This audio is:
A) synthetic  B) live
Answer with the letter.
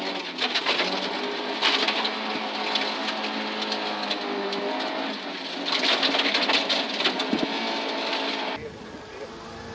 B